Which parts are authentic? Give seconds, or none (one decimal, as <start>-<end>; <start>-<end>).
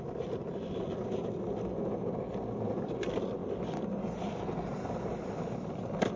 0.0-6.2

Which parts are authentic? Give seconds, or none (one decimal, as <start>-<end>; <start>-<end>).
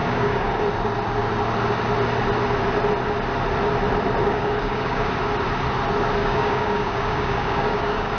0.5-4.2; 5.1-6.2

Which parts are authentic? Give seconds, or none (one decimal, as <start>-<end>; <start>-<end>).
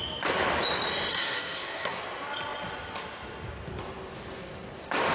0.0-1.1; 2.0-5.1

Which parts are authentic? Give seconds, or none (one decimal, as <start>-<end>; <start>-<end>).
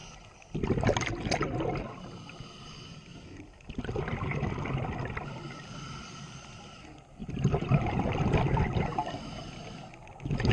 0.0-3.1; 3.9-7.2; 9.6-10.5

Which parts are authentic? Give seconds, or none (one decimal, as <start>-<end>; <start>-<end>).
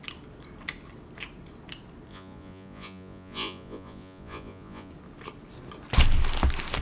0.0-2.1; 4.9-6.8